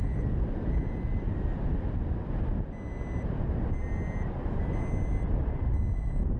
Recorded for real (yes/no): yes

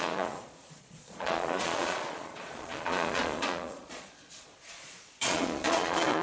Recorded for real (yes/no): no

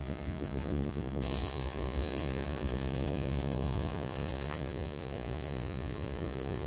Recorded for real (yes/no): no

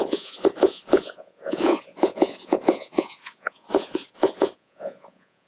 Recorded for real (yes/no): no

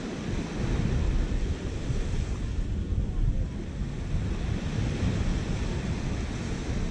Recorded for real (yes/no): yes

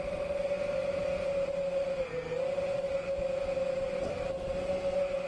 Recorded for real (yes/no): yes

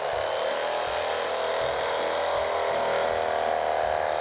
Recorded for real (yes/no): yes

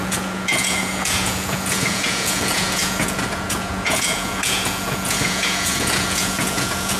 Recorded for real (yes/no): no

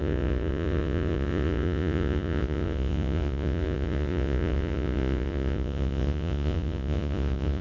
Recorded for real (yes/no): no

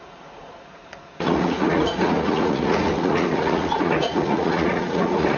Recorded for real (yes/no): no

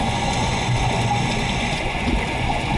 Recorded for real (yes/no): no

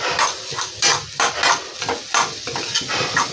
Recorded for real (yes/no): yes